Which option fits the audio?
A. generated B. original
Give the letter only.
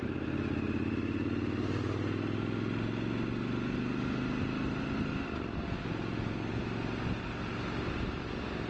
B